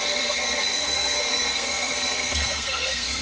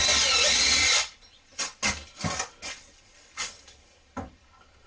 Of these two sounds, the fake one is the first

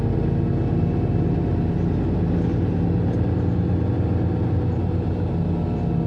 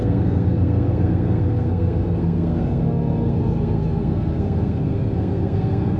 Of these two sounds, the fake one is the second